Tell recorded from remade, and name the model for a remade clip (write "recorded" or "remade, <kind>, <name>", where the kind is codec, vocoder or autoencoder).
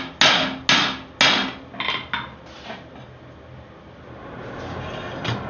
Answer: recorded